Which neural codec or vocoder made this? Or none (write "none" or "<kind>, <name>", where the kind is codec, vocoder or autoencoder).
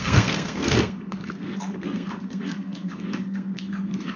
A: codec, SNAC